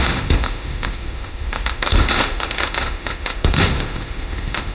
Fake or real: fake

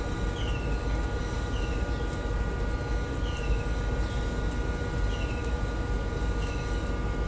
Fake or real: real